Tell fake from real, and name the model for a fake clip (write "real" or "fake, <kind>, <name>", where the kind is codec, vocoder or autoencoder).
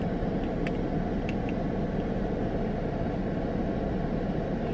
real